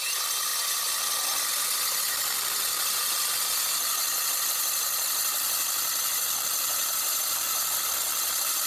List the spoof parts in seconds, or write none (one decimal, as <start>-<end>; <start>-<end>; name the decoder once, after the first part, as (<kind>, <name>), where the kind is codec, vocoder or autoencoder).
none